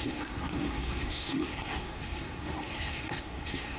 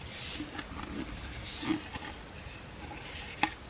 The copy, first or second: first